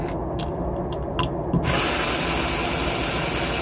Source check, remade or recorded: recorded